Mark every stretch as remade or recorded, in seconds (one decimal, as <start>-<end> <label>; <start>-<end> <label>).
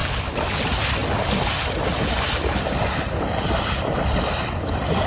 0.0-5.1 recorded